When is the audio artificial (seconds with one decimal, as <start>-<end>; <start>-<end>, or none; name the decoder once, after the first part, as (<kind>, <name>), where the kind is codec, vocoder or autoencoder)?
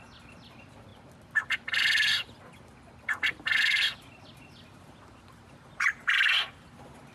none